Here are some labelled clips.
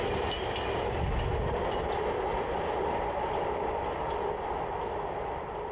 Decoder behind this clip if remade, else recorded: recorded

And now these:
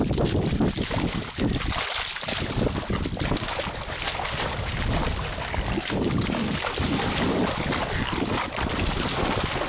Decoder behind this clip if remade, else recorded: recorded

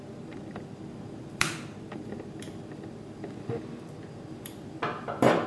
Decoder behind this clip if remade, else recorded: remade, vocoder, BigVGAN v2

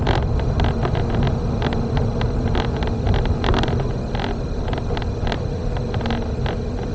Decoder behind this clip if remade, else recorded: recorded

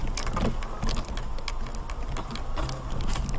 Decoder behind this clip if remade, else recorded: recorded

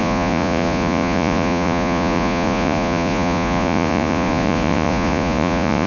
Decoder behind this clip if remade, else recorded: remade, vocoder, Vocos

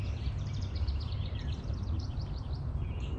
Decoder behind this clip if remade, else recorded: remade, vocoder, BigVGAN v2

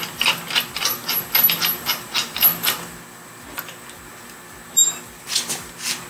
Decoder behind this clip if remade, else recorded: recorded